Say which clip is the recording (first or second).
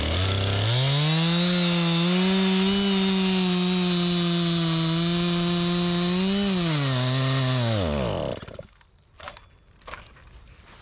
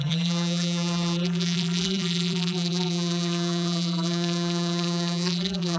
first